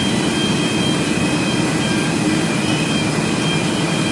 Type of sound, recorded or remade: remade